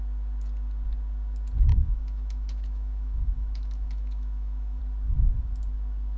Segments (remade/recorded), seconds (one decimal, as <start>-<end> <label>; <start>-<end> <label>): 0.0-1.7 recorded; 1.7-4.8 remade; 4.8-6.2 recorded